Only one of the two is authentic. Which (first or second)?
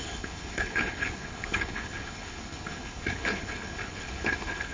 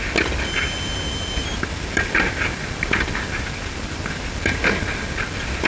second